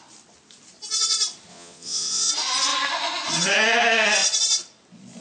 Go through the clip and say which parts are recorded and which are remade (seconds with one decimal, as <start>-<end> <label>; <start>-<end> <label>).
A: 0.0-1.5 recorded; 1.5-2.3 remade; 2.3-5.2 recorded